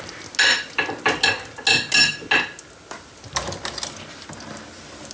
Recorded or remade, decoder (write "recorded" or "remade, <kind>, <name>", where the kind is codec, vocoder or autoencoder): recorded